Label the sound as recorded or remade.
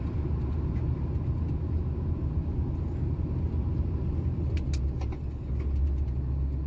recorded